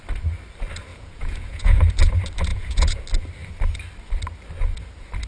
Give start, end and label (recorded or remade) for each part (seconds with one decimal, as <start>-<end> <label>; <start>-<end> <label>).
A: 0.0-0.9 recorded; 0.9-1.9 remade; 1.9-2.5 recorded; 2.5-3.0 remade; 3.0-5.3 recorded